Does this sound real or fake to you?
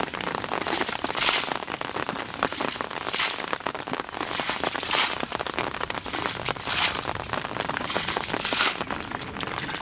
real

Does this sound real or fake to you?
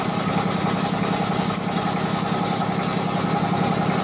real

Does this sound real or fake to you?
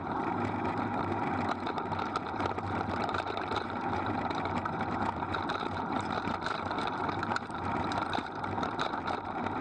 fake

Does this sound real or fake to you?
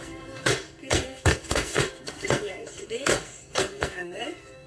fake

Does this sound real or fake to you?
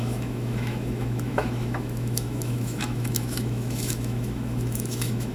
fake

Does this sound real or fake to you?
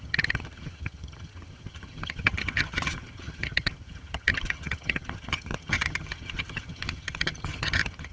fake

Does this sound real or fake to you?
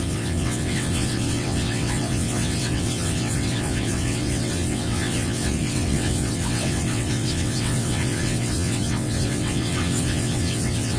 fake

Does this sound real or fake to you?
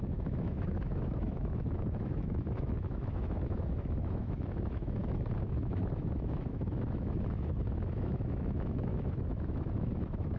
fake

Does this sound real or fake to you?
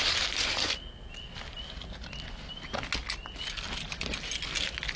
real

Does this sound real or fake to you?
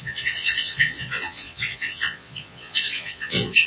fake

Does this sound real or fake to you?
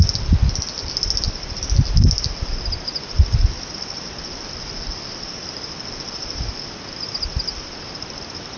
real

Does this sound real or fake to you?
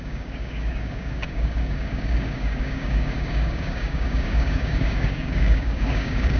fake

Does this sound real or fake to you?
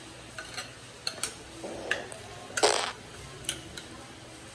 real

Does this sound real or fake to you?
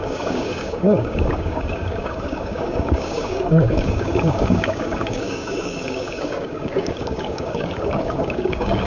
fake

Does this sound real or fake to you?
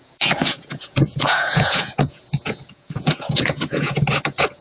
fake